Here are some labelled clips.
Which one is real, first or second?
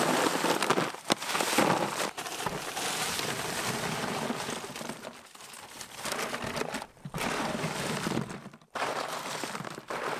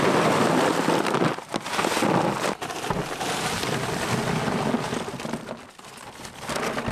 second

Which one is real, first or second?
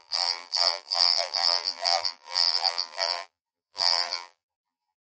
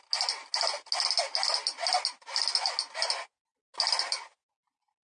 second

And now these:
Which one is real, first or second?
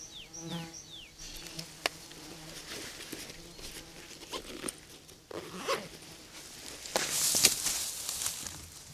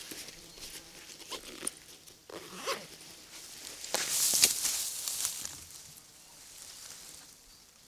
first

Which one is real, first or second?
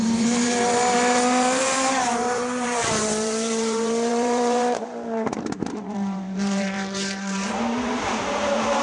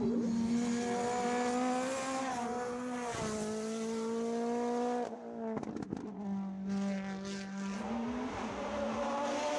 second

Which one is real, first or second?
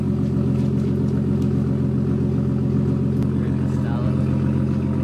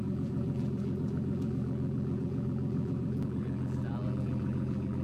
first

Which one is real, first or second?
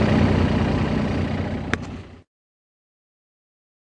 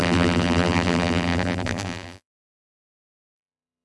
first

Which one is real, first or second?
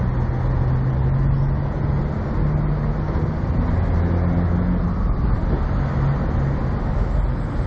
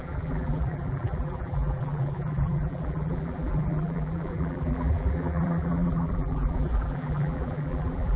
first